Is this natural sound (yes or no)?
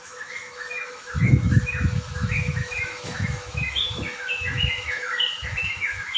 no